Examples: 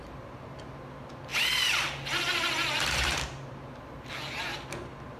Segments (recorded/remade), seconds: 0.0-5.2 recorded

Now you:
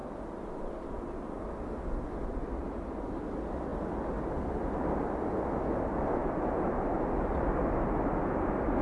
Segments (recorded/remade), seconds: 0.0-8.8 recorded

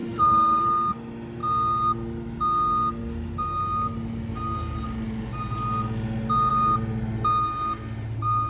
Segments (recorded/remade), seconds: 0.0-0.6 remade; 0.6-8.5 recorded

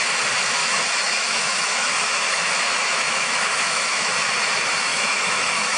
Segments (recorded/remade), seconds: 0.0-0.6 recorded; 0.6-4.1 remade; 4.1-4.9 recorded; 4.9-5.8 remade

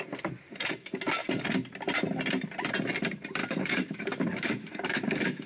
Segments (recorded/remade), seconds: 0.0-3.4 recorded; 3.4-5.5 remade

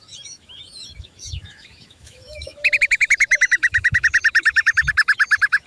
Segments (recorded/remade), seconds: 0.0-5.7 remade

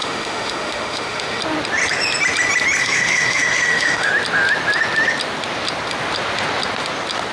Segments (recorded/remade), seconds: 0.0-1.4 remade; 1.4-2.8 recorded; 2.8-4.1 remade; 4.1-7.3 recorded